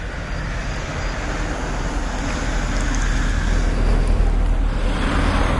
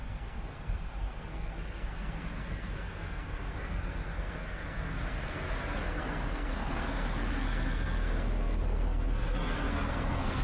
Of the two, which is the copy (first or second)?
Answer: second